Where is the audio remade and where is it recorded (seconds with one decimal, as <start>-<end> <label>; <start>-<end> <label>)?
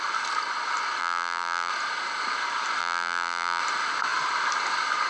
0.0-1.0 recorded; 1.0-1.7 remade; 1.7-2.8 recorded; 2.8-3.6 remade; 3.6-5.1 recorded